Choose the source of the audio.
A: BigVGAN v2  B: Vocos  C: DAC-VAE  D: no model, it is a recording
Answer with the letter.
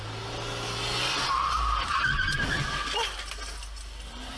D